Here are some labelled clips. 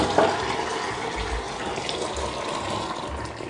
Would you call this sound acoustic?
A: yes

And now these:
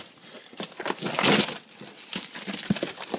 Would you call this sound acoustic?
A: yes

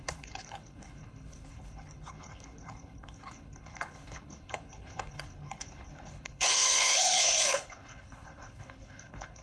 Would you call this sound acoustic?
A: no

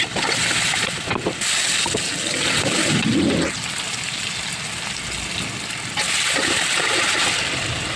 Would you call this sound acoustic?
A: yes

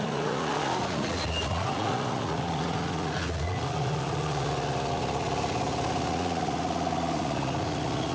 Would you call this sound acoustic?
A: no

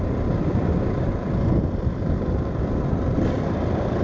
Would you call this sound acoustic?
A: no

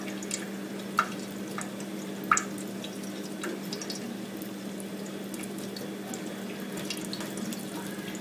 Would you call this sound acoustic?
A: yes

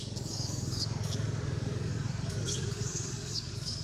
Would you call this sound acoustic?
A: no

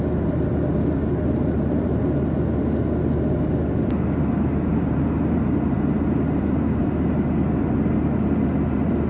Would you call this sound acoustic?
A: yes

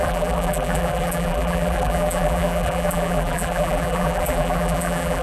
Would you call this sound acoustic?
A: no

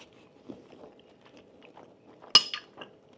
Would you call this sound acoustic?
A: yes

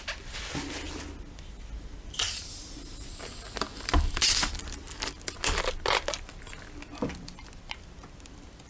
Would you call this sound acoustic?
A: yes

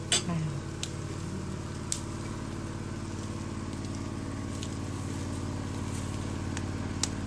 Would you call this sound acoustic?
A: yes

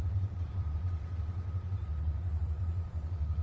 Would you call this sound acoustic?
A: no